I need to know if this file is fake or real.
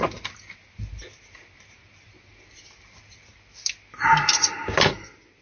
real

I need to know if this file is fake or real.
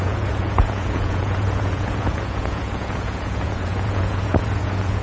fake